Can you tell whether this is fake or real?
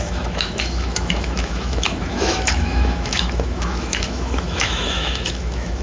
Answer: fake